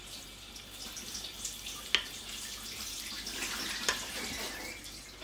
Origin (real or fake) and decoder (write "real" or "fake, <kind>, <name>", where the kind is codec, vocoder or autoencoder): real